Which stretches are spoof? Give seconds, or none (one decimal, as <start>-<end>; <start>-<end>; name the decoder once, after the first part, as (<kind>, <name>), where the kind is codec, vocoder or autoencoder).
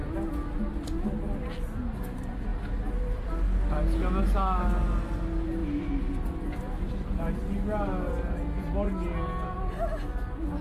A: none